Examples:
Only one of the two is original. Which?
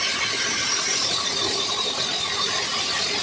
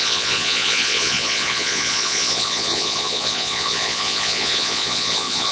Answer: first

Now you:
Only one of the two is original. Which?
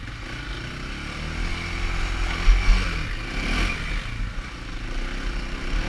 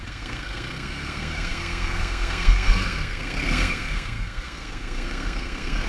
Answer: first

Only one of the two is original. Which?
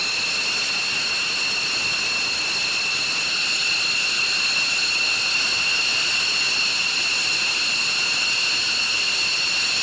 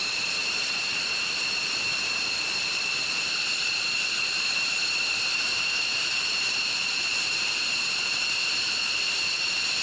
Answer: first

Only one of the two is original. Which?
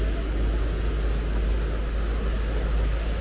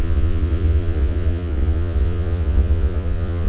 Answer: first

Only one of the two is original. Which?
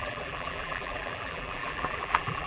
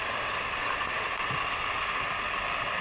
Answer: second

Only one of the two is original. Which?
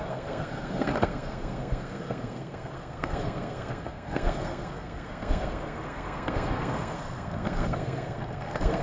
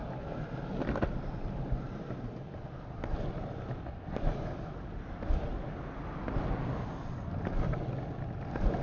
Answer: second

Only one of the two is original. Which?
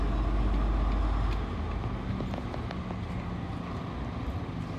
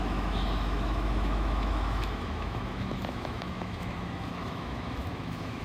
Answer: first